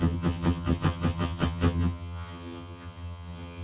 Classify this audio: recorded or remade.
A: remade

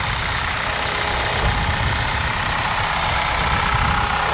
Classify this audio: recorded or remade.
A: recorded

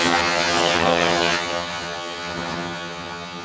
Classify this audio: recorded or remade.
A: remade